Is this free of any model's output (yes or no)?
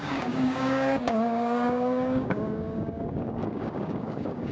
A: no